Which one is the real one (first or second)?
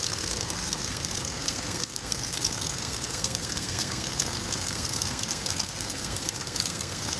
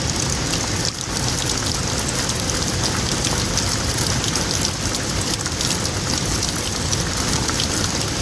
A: second